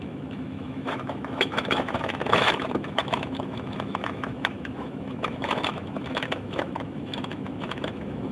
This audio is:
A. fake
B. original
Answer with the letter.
A